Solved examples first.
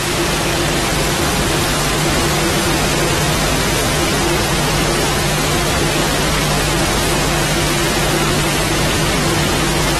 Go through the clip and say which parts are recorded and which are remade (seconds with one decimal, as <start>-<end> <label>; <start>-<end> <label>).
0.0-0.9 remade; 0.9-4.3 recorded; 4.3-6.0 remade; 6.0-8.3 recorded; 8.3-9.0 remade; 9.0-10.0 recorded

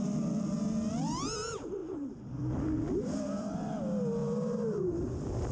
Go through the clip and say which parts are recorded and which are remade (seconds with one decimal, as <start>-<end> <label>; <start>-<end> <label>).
0.0-1.8 recorded; 1.8-3.7 remade; 3.7-5.5 recorded

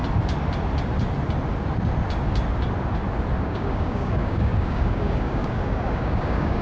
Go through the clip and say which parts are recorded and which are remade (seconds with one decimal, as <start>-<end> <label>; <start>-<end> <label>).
0.0-3.4 recorded; 3.4-6.6 remade

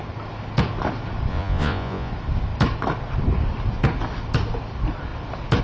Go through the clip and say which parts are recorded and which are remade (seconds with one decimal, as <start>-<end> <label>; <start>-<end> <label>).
0.0-1.3 recorded; 1.3-2.1 remade; 2.1-5.6 recorded

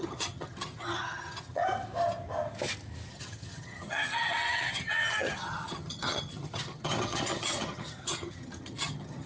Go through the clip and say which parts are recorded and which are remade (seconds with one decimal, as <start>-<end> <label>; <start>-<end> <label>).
0.0-1.6 remade; 1.6-3.1 recorded; 3.1-9.3 remade

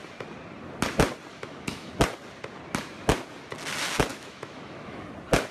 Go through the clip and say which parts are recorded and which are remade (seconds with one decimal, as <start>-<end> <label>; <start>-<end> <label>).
0.0-1.3 recorded; 1.3-1.9 remade; 1.9-4.1 recorded; 4.1-5.1 remade; 5.1-5.5 recorded

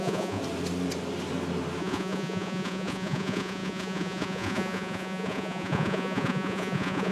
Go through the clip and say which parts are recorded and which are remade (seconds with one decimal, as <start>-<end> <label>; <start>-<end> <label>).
0.0-0.4 remade; 0.4-1.8 recorded; 1.8-7.1 remade